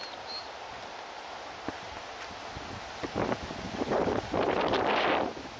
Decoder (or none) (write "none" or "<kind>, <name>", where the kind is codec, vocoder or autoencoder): none